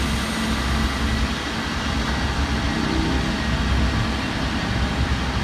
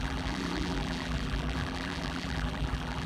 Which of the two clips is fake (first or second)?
second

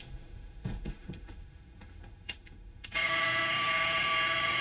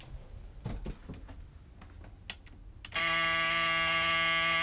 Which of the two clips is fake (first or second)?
first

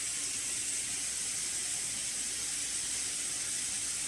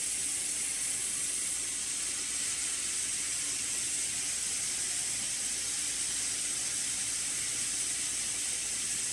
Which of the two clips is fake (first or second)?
second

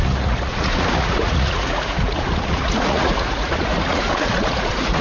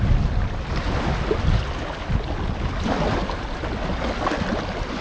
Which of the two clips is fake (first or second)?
first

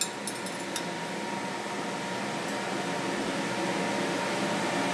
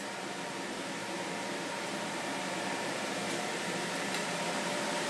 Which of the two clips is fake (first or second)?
second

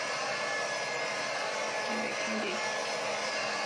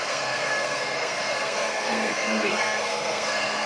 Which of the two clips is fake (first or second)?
second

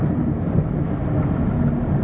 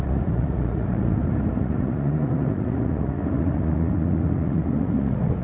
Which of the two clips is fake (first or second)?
second